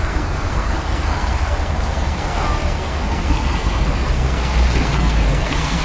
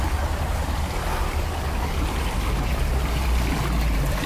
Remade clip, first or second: first